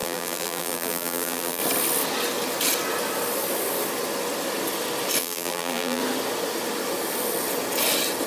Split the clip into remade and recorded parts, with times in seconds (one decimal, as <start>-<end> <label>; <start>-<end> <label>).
0.0-1.6 remade; 1.6-5.2 recorded; 5.2-6.0 remade; 6.0-8.3 recorded